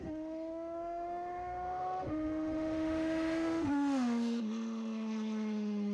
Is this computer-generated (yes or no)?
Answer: yes